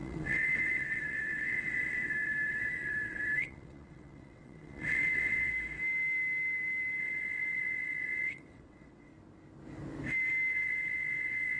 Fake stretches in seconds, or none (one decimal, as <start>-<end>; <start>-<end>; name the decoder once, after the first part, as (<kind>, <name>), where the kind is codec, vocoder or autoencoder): 0.0-5.5 (vocoder, WaveNeXt); 7.0-9.1; 10.5-11.6

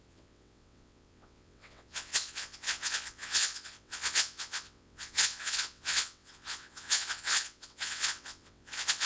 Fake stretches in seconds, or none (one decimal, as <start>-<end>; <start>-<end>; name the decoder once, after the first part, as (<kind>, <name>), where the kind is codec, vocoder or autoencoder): 0.0-9.1 (vocoder, WaveNeXt)

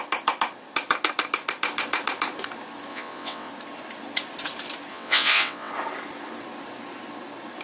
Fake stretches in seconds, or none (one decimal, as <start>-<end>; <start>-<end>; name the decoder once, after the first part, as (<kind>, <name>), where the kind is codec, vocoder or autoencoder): 2.9-3.5 (vocoder, WaveNeXt); 4.9-5.7

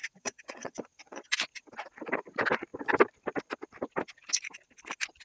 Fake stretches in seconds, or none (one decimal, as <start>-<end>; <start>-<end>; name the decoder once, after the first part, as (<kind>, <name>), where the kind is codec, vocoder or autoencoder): 0.0-1.2 (vocoder, WaveNeXt)

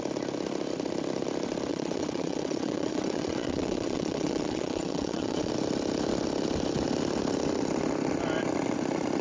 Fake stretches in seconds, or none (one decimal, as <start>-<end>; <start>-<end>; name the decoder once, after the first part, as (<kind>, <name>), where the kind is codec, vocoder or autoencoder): 1.7-5.5 (vocoder, WaveNeXt)

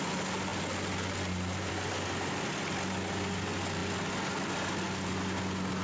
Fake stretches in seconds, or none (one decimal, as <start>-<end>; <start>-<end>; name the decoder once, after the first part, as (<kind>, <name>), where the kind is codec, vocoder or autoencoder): none

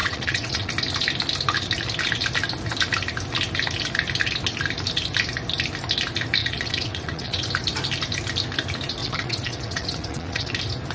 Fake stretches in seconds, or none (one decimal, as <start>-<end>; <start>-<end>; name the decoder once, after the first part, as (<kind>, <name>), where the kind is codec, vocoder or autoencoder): 0.0-0.7 (vocoder, WaveNeXt); 6.4-7.5; 9.0-10.5